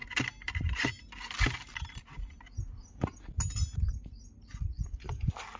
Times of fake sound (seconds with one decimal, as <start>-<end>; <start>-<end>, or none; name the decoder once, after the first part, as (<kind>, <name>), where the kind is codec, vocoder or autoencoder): none